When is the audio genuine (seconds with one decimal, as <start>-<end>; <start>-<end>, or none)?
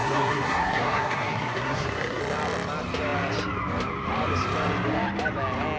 2.2-5.8